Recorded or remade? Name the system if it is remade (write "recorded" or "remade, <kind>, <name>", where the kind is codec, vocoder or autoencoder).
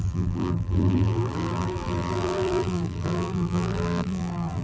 remade, vocoder, BigVGAN v2